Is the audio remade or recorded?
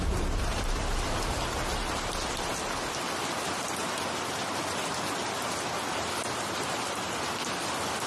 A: recorded